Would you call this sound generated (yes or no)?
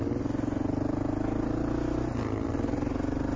no